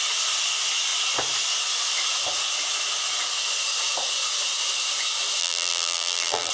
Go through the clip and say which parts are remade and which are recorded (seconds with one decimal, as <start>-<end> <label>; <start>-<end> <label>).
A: 0.0-5.4 recorded; 5.4-6.5 remade